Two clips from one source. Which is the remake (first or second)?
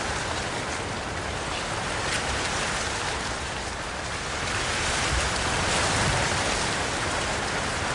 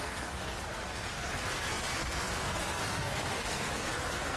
second